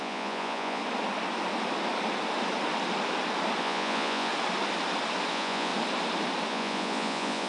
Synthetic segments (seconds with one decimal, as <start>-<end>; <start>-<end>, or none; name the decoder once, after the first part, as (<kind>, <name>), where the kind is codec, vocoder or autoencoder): 0.0-0.8 (vocoder, Vocos); 3.6-4.3; 5.3-5.7; 6.5-7.5